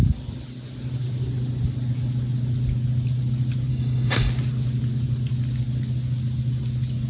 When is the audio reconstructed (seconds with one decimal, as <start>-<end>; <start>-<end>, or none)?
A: 3.7-4.3